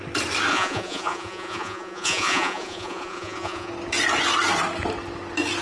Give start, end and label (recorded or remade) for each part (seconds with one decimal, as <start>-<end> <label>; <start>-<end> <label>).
0.0-0.5 recorded; 0.5-3.7 remade; 3.7-5.6 recorded